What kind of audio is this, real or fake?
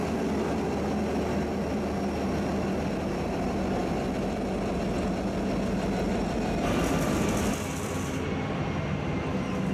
real